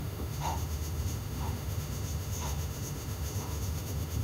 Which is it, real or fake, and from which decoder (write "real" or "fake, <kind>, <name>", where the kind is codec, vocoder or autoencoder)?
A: fake, autoencoder, DAC-VAE